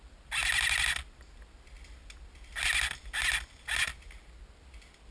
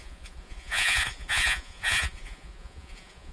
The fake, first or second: second